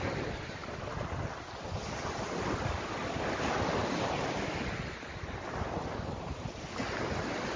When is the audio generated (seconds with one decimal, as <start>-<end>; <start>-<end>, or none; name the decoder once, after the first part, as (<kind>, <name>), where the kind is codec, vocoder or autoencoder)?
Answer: none